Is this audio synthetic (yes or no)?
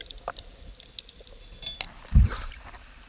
no